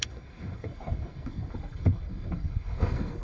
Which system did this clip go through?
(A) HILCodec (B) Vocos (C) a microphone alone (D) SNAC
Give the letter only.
D